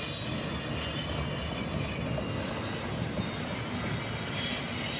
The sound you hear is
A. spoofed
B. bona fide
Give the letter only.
B